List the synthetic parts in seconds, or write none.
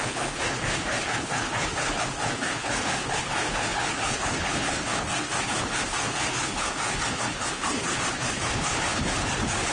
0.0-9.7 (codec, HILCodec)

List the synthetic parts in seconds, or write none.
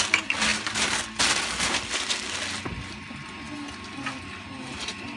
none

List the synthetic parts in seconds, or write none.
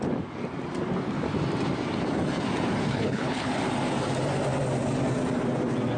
2.8-3.5 (codec, HILCodec)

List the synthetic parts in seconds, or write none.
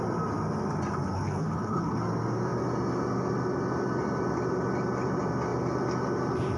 1.1-2.0 (codec, HILCodec)